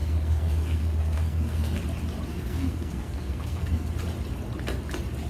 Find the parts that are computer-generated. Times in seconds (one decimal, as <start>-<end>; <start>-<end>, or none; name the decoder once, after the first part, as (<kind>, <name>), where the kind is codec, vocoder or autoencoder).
0.0-1.8 (codec, SNAC); 2.3-3.9